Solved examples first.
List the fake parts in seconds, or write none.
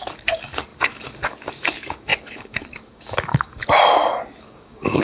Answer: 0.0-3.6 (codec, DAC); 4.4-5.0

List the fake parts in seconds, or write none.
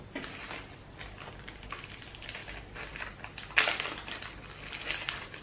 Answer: none